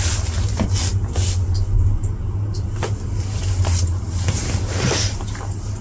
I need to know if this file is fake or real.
real